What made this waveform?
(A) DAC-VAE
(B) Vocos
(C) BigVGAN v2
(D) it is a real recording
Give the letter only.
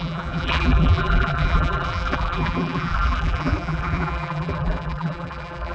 C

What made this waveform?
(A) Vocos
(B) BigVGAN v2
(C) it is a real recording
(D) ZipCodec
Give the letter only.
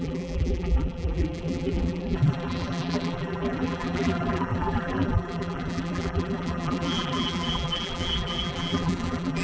B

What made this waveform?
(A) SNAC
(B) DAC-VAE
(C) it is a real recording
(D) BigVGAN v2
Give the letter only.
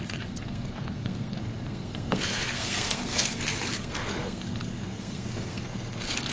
A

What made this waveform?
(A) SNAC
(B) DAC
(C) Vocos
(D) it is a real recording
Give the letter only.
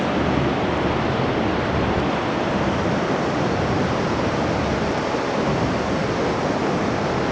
D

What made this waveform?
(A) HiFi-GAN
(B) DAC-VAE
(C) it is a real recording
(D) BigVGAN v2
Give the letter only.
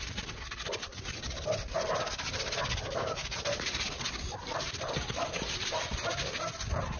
C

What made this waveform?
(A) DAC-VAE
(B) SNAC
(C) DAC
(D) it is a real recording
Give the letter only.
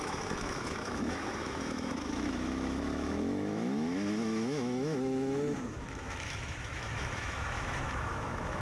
A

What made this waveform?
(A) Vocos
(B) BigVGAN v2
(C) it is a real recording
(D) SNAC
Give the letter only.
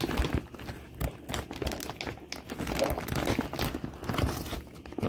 C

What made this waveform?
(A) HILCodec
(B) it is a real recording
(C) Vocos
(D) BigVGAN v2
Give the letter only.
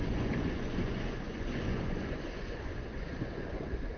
C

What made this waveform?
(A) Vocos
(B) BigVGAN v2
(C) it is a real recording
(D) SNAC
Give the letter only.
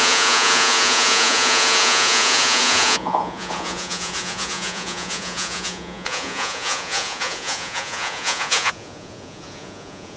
A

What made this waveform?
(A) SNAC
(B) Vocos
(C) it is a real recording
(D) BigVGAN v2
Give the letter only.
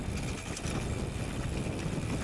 C